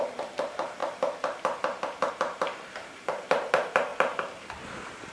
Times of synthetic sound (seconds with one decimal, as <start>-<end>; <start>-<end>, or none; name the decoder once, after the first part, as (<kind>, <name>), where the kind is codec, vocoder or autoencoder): 0.0-0.8 (vocoder, BigVGAN v2); 2.1-5.1